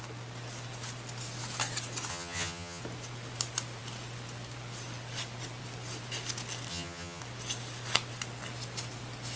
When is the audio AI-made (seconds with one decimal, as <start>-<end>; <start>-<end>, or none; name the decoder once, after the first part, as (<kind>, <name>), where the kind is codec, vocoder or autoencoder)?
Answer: 2.1-2.8 (vocoder, HiFi-GAN); 6.7-7.2